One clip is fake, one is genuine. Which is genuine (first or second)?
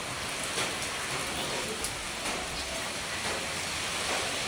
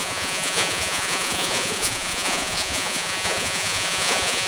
first